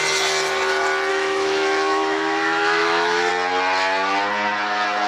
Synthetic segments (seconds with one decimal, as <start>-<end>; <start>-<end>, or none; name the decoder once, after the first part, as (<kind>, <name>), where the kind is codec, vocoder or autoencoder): 1.1-3.3 (autoencoder, DAC-VAE)